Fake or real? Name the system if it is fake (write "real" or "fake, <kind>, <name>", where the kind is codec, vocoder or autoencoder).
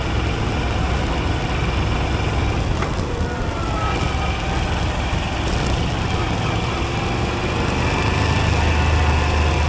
real